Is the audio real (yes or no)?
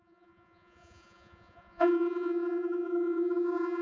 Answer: no